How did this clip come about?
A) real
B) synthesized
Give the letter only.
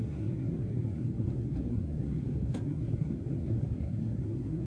B